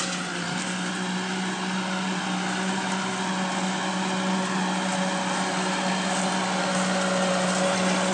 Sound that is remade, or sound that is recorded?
recorded